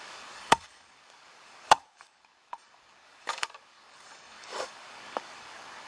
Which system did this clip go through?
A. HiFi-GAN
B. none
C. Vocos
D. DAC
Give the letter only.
D